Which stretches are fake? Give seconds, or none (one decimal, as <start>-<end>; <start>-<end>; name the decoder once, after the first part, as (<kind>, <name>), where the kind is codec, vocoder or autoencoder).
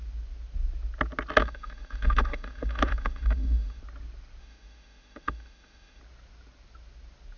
1.4-3.8 (autoencoder, DAC-VAE); 4.4-6.0